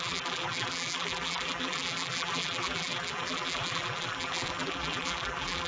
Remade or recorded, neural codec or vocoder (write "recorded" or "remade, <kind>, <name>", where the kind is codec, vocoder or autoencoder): remade, vocoder, BigVGAN v2